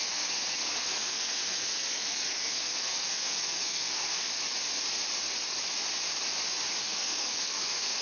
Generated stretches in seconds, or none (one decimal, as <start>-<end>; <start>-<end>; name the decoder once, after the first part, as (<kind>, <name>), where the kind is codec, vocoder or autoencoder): 0.0-4.3 (codec, SNAC); 6.8-8.0